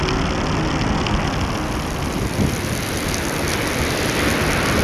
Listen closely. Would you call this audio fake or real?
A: real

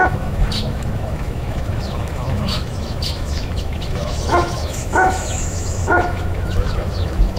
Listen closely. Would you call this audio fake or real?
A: fake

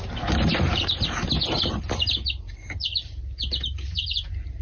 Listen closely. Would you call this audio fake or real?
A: real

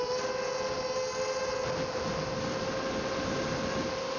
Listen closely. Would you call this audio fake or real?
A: real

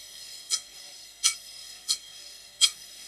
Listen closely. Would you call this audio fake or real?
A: fake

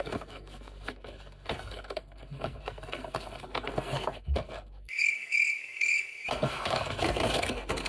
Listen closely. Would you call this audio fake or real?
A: fake